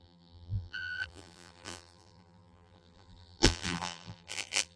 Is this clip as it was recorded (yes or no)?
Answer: no